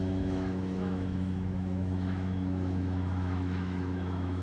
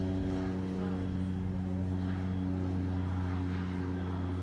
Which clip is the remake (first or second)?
first